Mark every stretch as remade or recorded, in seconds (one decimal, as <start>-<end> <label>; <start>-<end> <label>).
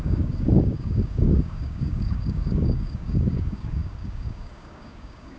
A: 0.0-5.4 remade